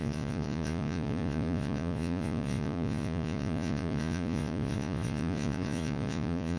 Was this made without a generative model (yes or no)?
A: no